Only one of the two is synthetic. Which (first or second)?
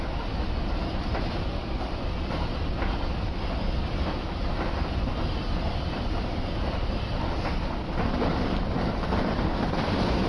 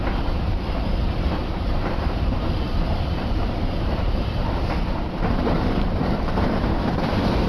second